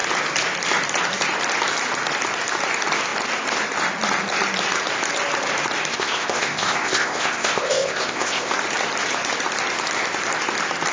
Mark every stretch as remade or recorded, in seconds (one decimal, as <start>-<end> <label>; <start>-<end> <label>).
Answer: 0.0-5.9 recorded; 5.9-8.5 remade; 8.5-10.9 recorded